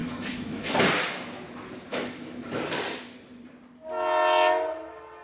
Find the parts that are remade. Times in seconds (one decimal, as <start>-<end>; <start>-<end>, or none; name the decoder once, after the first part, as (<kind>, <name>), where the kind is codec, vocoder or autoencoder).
0.0-0.8 (autoencoder, DAC-VAE); 1.9-2.5